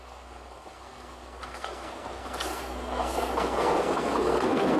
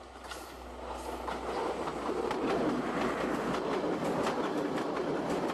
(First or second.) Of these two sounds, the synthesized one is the first